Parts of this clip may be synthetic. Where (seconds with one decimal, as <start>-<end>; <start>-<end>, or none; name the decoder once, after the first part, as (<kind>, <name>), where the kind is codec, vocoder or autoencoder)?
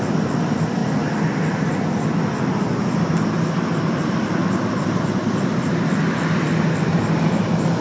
none